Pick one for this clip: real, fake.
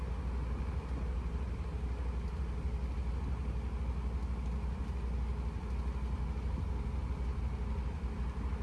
real